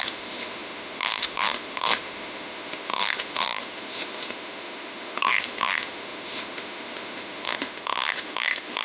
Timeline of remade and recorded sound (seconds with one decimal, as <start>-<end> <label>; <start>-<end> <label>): 0.0-8.8 remade